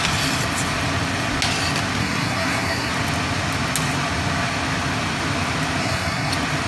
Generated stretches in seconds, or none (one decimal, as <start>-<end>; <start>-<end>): 2.0-2.9; 5.8-6.3